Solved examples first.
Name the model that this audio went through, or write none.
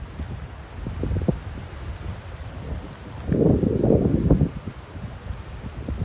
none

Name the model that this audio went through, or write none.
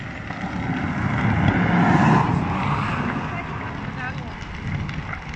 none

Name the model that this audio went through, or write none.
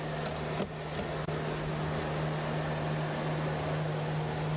none